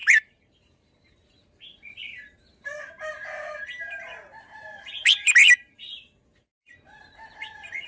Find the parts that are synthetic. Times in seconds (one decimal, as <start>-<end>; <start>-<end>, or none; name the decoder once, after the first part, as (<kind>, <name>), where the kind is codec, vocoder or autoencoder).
0.0-1.5 (vocoder, BigVGAN v2)